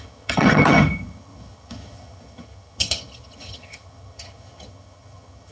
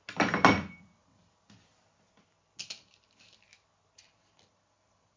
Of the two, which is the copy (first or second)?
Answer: first